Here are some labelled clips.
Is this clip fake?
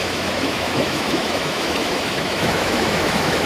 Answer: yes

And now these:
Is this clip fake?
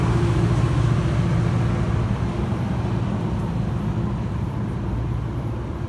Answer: no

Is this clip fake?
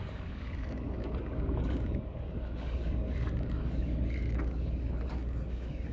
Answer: yes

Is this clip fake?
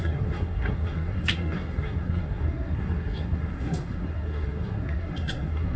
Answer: yes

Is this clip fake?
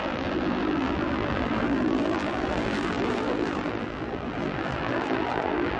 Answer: yes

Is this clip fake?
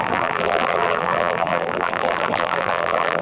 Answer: yes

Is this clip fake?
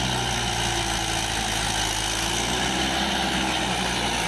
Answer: no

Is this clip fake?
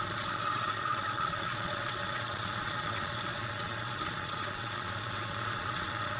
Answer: yes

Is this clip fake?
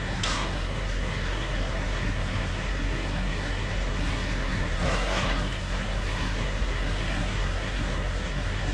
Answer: yes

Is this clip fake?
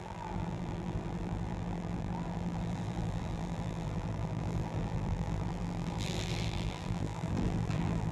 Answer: yes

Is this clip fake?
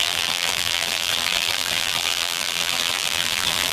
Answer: yes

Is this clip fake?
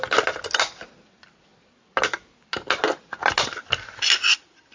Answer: no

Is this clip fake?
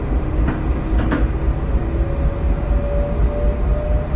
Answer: no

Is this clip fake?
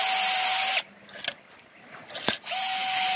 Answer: no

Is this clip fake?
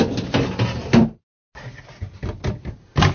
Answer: no